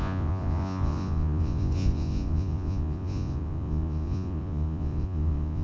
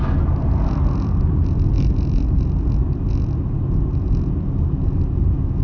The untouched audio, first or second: second